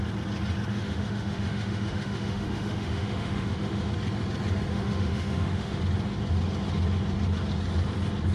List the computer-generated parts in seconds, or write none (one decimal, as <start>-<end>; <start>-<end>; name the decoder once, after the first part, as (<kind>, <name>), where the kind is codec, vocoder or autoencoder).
0.7-3.9 (autoencoder, DAC-VAE); 4.7-5.8